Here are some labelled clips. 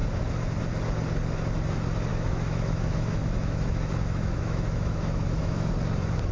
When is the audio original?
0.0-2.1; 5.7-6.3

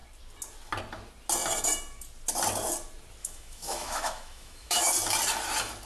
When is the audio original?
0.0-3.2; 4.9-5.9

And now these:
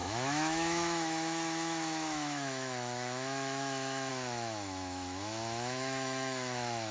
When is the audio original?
none